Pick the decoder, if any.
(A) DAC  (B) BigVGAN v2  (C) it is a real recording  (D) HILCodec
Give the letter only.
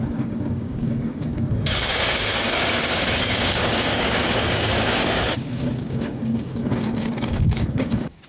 A